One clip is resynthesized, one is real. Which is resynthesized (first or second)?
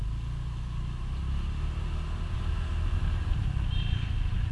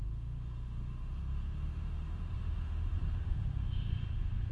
second